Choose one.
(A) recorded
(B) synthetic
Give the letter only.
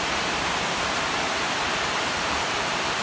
A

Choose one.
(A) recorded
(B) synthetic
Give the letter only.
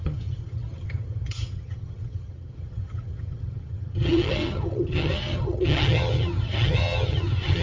B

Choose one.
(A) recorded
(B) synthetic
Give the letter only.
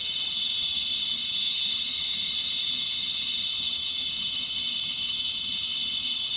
B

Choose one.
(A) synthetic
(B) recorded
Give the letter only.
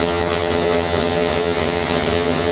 A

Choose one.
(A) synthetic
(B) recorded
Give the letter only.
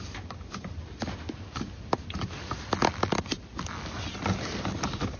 B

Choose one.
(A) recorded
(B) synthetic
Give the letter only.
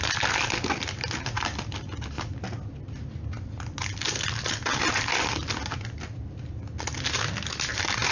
A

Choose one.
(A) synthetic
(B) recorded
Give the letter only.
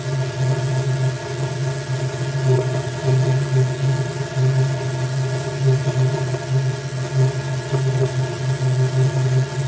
A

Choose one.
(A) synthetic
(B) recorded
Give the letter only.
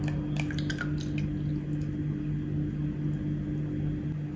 B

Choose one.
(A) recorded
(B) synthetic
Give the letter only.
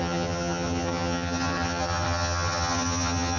B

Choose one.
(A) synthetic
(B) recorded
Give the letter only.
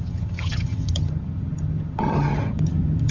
A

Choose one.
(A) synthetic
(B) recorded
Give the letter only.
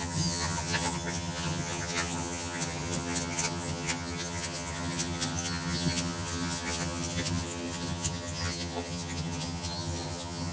A